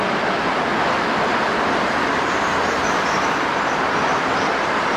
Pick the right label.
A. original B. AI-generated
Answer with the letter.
A